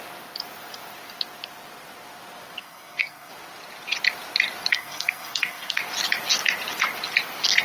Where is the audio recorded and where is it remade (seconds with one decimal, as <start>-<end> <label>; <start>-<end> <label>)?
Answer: 0.0-2.6 recorded; 2.6-3.3 remade; 3.3-4.7 recorded; 4.7-5.8 remade; 5.8-7.6 recorded